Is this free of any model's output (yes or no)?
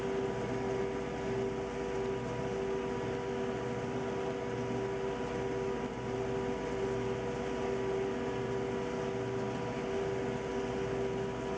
yes